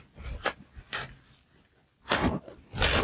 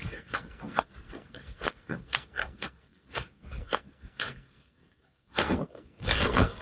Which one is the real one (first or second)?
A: first